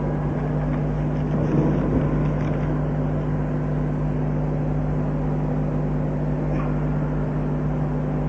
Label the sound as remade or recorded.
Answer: recorded